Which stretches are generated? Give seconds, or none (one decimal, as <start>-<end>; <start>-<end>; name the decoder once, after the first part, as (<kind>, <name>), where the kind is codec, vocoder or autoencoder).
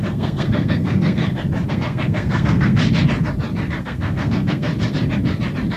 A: 0.0-1.2 (codec, SNAC); 1.7-2.8; 3.8-4.7